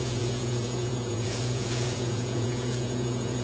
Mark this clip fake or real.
fake